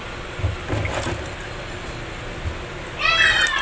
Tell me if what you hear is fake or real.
real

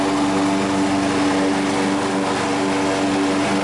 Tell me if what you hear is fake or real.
real